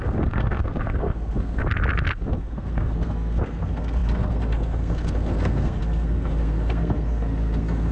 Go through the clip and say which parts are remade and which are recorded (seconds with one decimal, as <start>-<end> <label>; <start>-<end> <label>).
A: 0.0-1.6 remade; 1.6-2.1 recorded; 2.1-7.9 remade